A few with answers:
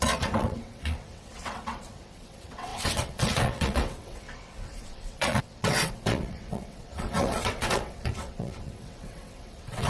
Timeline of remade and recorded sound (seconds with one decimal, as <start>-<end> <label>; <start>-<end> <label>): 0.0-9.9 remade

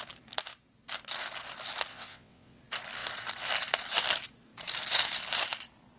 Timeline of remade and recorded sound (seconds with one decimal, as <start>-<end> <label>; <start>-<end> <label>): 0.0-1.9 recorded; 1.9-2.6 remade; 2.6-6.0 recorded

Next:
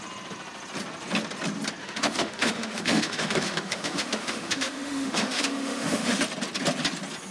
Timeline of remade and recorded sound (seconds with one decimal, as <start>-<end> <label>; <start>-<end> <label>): 0.0-1.8 recorded; 1.8-6.2 remade; 6.2-7.3 recorded

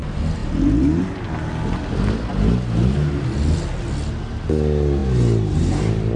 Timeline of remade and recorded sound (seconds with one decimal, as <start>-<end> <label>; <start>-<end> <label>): 0.0-6.2 recorded